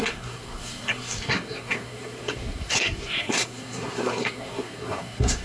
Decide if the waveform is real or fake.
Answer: fake